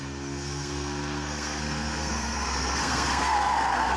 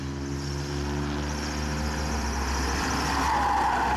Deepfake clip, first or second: first